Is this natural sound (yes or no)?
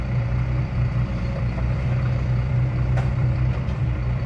no